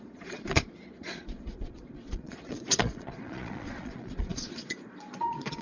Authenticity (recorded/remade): remade